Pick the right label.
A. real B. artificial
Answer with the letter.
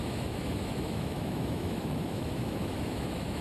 B